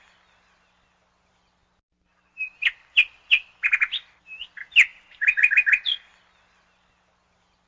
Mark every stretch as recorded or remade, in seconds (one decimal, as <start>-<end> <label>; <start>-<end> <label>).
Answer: 0.0-4.9 recorded; 4.9-5.5 remade; 5.5-7.7 recorded